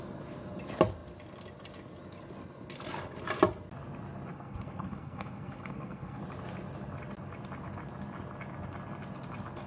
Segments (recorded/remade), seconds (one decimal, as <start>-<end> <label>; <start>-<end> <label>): 0.0-4.3 recorded; 4.3-6.2 remade; 6.2-9.7 recorded